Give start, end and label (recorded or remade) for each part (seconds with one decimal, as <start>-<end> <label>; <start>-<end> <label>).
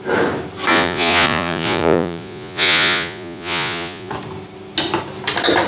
0.0-0.7 recorded; 0.7-4.1 remade; 4.1-5.7 recorded